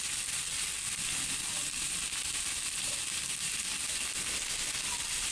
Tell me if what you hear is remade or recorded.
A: recorded